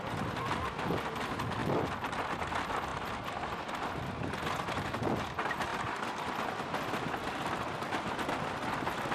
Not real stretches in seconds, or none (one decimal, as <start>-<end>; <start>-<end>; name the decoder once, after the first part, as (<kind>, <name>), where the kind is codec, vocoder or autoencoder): none